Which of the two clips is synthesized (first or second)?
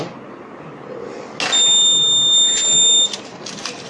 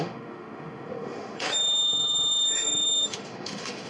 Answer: second